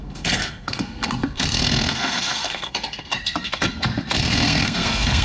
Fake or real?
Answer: fake